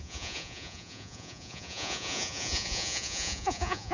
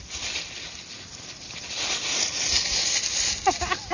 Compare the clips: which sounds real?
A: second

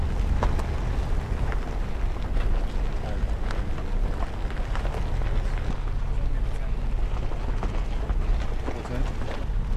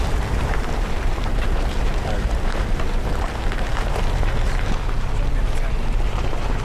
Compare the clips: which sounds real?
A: first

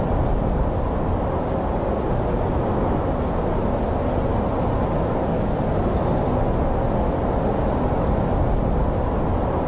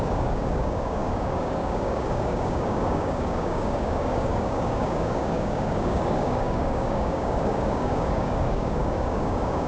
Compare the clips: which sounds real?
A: first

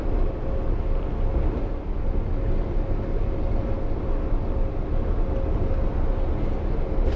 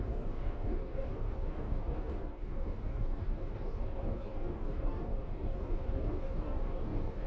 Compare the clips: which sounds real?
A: first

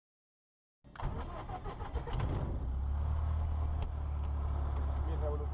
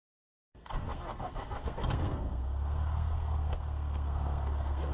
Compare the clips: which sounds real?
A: first